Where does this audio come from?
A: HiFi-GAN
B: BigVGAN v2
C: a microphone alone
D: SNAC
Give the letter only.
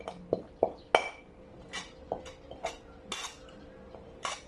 C